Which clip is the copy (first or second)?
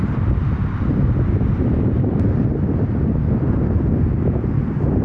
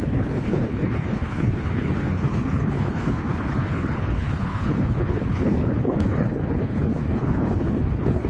second